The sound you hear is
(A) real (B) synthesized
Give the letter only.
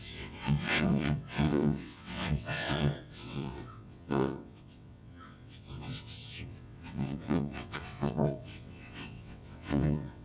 B